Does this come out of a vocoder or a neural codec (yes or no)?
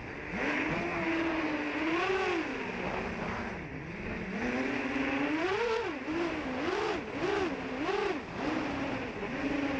no